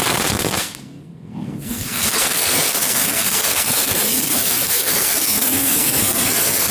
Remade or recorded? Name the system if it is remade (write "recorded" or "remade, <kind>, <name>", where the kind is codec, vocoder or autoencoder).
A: remade, codec, SNAC